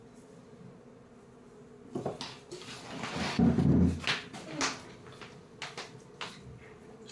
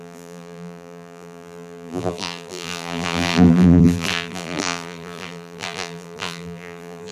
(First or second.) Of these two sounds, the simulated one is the second